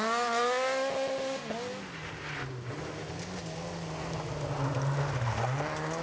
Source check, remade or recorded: recorded